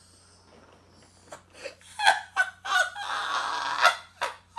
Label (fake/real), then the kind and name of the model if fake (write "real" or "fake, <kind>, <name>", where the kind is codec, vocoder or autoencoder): real